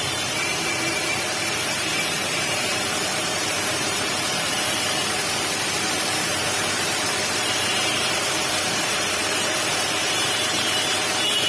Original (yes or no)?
no